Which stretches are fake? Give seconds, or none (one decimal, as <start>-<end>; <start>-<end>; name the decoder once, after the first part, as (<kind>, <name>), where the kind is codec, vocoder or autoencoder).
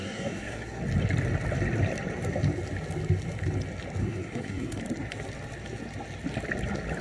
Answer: 0.0-0.8 (codec, SNAC); 4.0-4.8